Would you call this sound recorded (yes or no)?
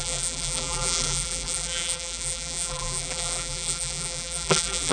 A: no